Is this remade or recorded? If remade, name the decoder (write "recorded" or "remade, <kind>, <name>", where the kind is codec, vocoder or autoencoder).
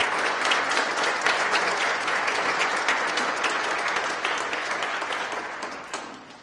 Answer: remade, vocoder, Vocos